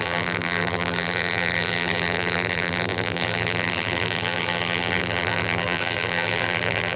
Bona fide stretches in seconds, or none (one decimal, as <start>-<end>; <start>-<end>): none